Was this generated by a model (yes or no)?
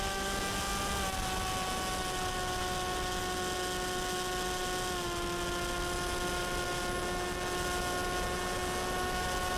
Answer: no